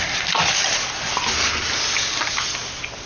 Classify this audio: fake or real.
real